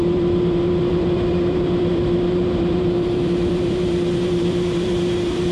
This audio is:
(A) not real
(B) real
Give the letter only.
A